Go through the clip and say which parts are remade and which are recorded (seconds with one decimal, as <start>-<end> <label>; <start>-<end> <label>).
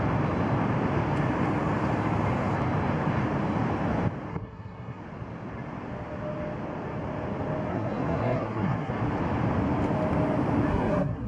0.0-4.3 recorded; 4.3-5.0 remade; 5.0-7.7 recorded; 7.7-8.9 remade; 8.9-10.7 recorded; 10.7-11.3 remade